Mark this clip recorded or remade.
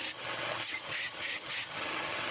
remade